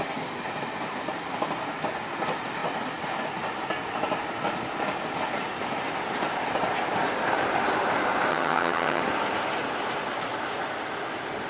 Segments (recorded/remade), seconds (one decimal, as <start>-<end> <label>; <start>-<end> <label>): 0.0-8.3 recorded; 8.3-9.0 remade; 9.0-11.5 recorded